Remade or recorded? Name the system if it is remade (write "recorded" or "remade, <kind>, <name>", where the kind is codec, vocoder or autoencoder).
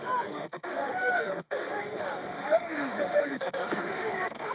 remade, autoencoder, DAC-VAE